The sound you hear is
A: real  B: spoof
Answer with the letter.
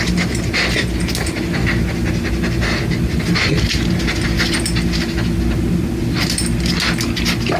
A